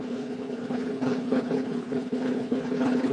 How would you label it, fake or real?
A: fake